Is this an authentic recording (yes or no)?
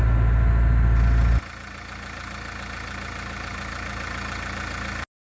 yes